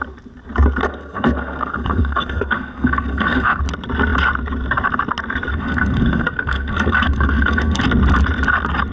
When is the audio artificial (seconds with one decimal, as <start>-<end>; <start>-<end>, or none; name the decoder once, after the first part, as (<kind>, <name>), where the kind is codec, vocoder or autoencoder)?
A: 0.8-3.6 (codec, SNAC); 5.5-7.8